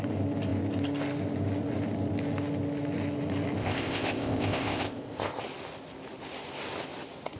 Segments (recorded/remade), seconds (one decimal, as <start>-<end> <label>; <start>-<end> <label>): 0.0-3.6 recorded; 3.6-5.4 remade; 5.4-7.4 recorded

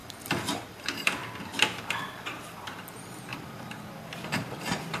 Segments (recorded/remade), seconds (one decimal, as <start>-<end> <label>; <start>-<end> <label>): 0.0-0.5 recorded; 0.5-1.2 remade; 1.2-2.0 recorded; 2.0-5.0 remade